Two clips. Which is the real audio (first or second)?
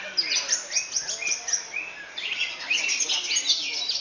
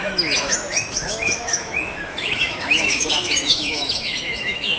first